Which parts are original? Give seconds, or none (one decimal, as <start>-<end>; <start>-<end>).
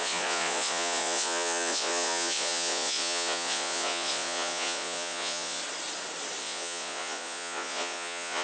5.6-6.4